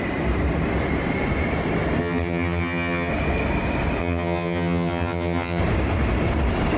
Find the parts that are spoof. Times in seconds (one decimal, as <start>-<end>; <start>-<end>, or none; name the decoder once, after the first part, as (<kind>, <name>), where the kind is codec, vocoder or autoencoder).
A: 2.0-3.1 (vocoder, HiFi-GAN); 4.0-5.6